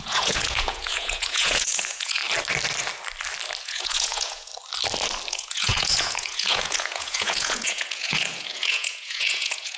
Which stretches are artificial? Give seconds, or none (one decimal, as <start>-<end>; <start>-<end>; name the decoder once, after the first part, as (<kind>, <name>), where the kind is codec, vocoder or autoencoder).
0.0-2.2 (vocoder, Vocos); 3.6-4.5; 5.3-9.8